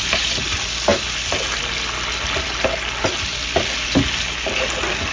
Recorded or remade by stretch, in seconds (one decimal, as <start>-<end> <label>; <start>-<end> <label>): 0.0-5.1 recorded